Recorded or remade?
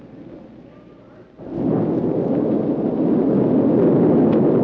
recorded